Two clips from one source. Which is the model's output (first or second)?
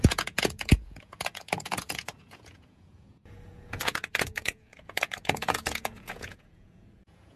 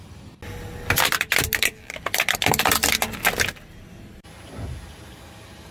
first